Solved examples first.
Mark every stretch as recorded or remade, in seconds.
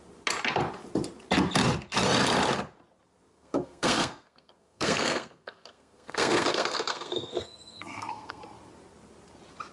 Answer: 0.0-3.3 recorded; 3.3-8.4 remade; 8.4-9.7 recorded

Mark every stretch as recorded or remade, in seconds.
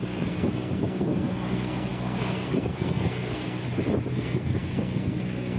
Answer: 0.0-3.6 remade; 3.6-4.1 recorded; 4.1-5.6 remade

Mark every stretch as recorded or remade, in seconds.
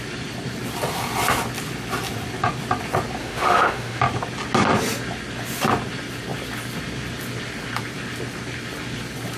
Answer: 0.0-3.2 recorded; 3.2-4.0 remade; 4.0-9.4 recorded